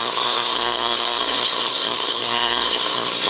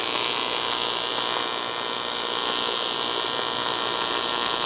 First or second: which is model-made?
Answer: first